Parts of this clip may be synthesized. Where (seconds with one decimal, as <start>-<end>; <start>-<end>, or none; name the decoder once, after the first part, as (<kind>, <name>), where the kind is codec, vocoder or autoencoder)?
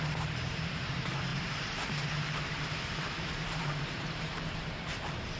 0.0-5.4 (vocoder, BigVGAN v2)